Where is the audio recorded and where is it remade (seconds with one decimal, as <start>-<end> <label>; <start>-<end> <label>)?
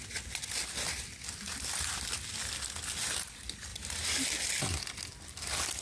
0.0-5.8 recorded